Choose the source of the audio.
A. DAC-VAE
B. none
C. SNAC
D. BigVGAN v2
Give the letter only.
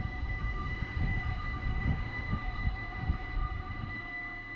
A